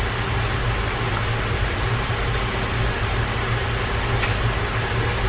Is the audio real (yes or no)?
yes